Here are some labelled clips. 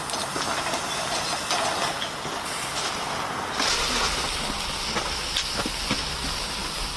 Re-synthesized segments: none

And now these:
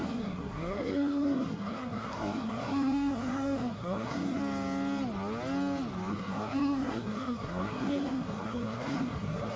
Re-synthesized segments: 0.0-4.4 (codec, SNAC); 6.1-9.6

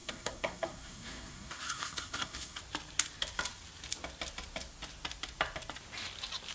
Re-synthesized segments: 0.0-2.6 (codec, SNAC)

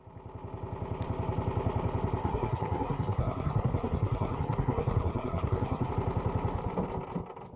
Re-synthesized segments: 2.2-5.9 (codec, SNAC)

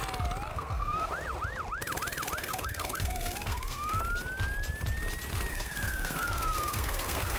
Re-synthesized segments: 0.5-1.1 (codec, SNAC); 2.4-4.0; 5.5-7.4

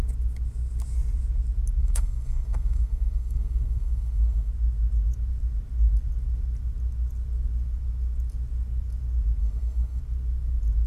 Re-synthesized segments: 1.8-4.5 (codec, SNAC); 9.4-10.0

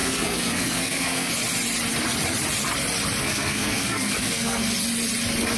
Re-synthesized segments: 0.0-1.3 (codec, SNAC); 3.2-4.6